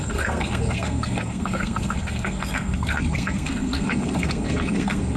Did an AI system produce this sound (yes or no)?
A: yes